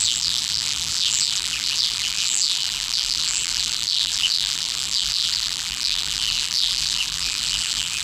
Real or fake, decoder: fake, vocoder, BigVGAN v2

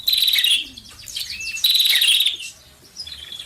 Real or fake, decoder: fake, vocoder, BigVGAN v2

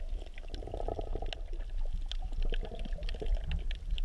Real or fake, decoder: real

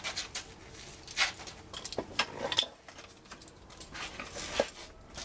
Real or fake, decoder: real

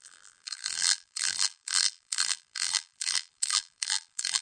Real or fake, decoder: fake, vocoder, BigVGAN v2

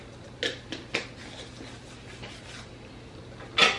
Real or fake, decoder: real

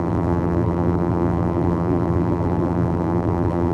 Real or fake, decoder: fake, vocoder, BigVGAN v2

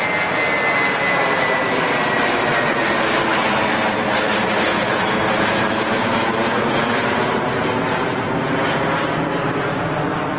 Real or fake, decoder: real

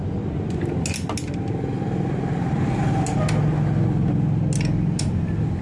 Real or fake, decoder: real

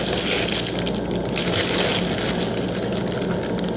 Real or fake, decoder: real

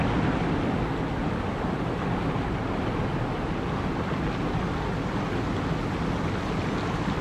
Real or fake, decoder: real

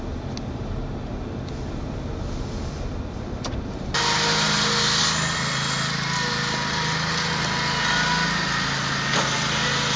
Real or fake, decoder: real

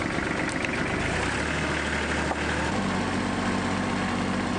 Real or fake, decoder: real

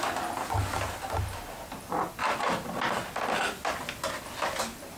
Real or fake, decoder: real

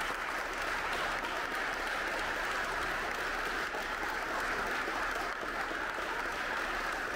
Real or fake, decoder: real